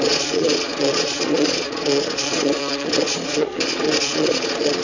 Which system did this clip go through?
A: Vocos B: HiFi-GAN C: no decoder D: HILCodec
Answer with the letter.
A